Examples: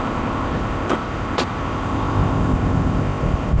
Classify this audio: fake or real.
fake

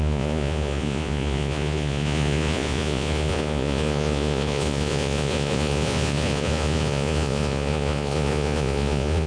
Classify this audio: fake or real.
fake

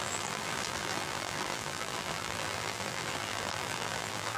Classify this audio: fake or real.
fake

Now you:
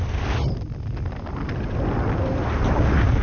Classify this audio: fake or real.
real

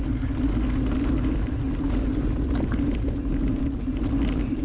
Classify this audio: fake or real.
real